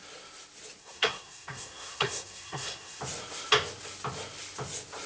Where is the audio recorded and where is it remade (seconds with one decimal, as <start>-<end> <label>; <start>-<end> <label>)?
0.0-0.8 recorded; 0.8-3.0 remade; 3.0-5.1 recorded